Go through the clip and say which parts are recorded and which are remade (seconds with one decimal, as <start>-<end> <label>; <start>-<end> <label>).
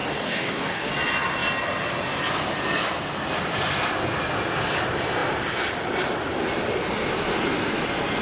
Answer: 0.0-0.9 remade; 0.9-8.2 recorded